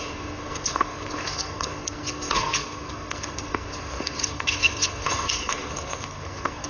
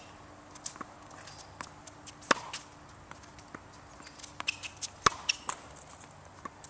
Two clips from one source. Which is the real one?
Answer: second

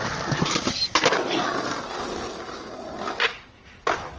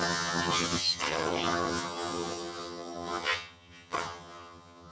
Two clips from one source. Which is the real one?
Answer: first